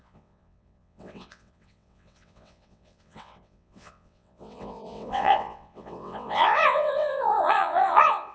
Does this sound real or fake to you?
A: fake